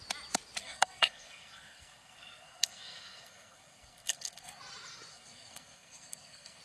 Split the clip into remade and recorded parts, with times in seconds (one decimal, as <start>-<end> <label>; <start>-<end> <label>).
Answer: 0.0-0.6 recorded; 0.6-4.6 remade; 4.6-5.1 recorded; 5.1-6.6 remade